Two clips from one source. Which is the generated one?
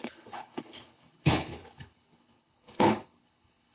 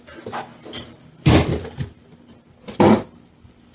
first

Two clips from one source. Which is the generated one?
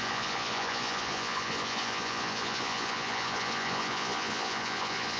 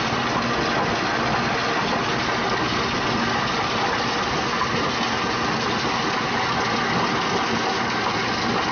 first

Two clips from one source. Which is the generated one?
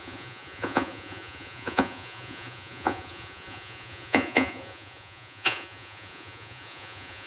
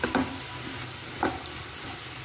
first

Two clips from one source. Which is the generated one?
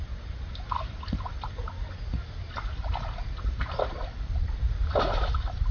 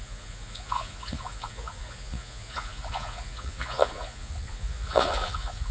second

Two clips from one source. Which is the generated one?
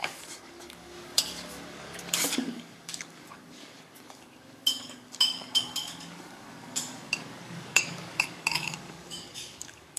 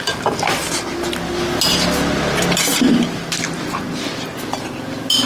first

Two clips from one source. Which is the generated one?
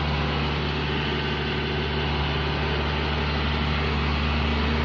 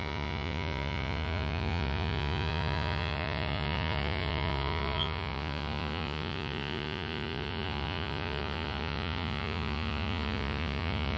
second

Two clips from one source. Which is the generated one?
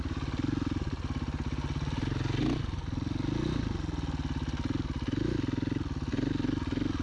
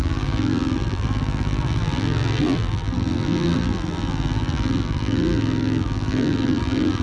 second